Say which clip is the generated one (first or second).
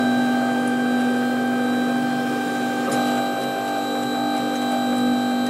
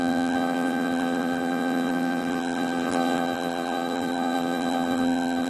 second